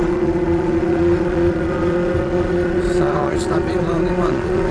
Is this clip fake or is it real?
fake